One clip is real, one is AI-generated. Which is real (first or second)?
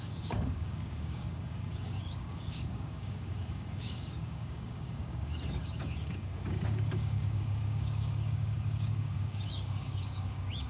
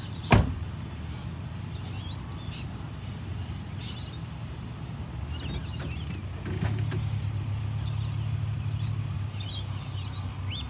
second